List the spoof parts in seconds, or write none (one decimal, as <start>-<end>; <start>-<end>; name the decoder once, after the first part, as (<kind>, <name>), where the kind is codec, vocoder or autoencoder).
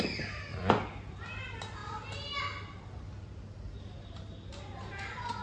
none